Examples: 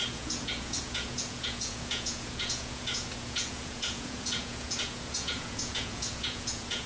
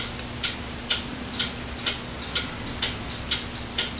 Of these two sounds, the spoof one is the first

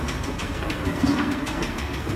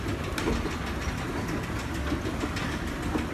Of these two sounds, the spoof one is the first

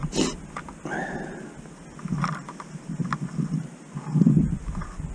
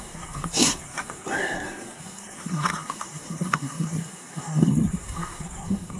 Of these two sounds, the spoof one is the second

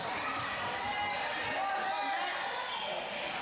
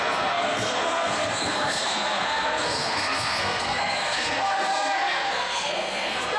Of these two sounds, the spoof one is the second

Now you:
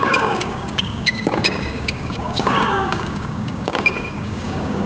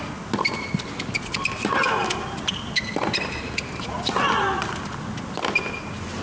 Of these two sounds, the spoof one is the first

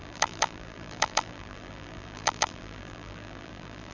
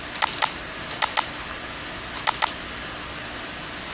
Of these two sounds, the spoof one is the first